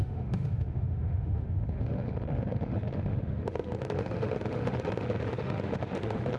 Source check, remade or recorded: remade